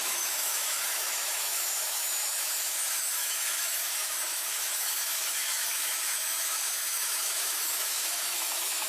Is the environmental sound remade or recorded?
remade